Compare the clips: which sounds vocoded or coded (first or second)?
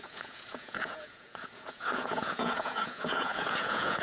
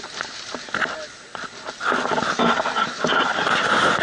first